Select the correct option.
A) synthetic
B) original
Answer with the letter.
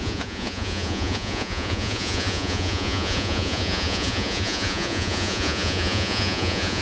A